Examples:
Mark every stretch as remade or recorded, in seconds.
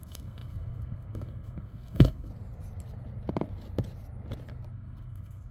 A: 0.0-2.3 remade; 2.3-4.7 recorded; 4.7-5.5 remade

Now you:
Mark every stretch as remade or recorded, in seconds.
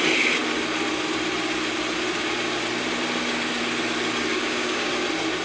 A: 0.0-4.3 recorded; 4.3-4.9 remade; 4.9-5.4 recorded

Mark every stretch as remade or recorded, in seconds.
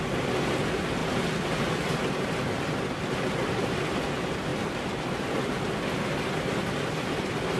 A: 0.0-7.6 recorded